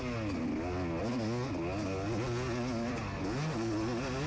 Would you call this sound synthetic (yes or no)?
no